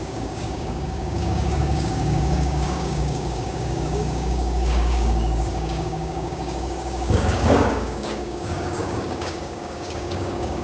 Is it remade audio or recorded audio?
remade